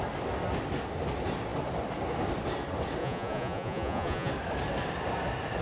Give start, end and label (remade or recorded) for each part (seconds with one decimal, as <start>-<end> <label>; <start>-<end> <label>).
0.0-3.0 recorded; 3.0-4.3 remade; 4.3-5.6 recorded